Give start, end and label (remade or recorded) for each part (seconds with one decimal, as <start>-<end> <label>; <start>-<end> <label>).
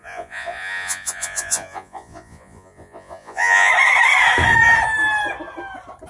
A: 0.0-3.7 remade; 3.7-6.1 recorded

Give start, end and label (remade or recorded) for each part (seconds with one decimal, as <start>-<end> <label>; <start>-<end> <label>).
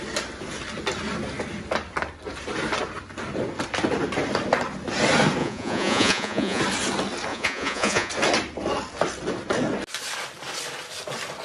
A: 0.0-5.4 recorded; 5.4-6.6 remade; 6.6-7.3 recorded; 7.3-8.1 remade; 8.1-11.4 recorded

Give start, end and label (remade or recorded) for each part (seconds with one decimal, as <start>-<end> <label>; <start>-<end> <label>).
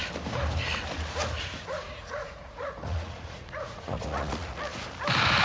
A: 0.0-1.4 recorded; 1.4-4.5 remade; 4.5-5.4 recorded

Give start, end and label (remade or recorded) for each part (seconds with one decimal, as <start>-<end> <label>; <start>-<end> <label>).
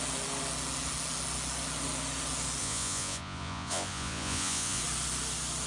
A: 0.0-2.6 recorded; 2.6-4.8 remade; 4.8-5.7 recorded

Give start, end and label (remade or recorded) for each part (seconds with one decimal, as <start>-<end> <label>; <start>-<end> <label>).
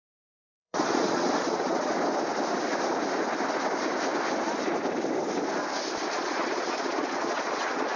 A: 0.0-1.9 remade; 1.9-6.1 recorded; 6.1-8.0 remade